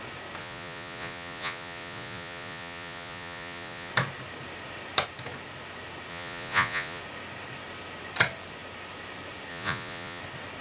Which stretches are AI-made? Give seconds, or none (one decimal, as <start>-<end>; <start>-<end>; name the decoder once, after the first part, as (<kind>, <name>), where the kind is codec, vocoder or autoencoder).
0.4-3.9 (vocoder, Vocos); 6.1-7.0; 9.5-10.2